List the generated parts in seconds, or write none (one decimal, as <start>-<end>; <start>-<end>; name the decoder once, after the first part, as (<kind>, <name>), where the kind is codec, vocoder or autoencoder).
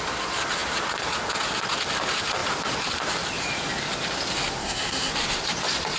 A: 4.6-5.1 (codec, SNAC)